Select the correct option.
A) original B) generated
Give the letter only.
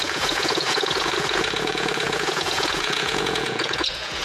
B